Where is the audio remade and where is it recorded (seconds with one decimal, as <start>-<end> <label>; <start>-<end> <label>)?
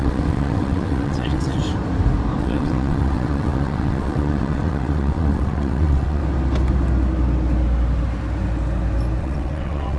0.0-1.6 remade; 1.6-2.4 recorded; 2.4-6.2 remade; 6.2-9.2 recorded; 9.2-10.0 remade